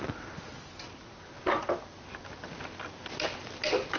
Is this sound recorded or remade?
recorded